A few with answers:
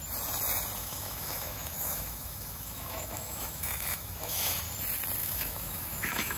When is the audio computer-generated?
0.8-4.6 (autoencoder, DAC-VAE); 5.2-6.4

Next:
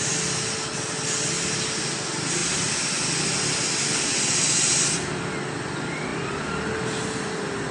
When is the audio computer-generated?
none

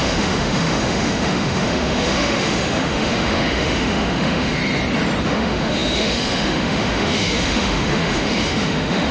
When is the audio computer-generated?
0.0-4.6 (autoencoder, DAC-VAE); 5.2-9.1

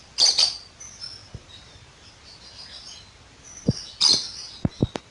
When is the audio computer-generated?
none

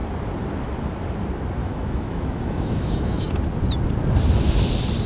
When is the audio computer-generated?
1.6-3.3 (autoencoder, DAC-VAE)

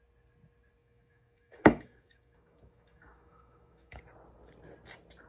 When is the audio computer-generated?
0.8-4.0 (autoencoder, DAC-VAE)

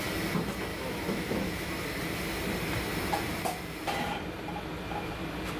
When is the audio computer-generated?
0.7-1.7 (autoencoder, DAC-VAE)

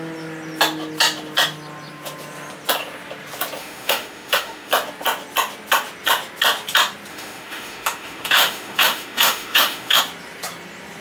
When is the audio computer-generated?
3.6-4.7 (autoencoder, DAC-VAE); 7.1-10.0